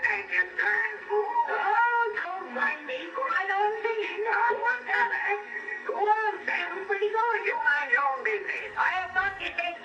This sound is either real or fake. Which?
fake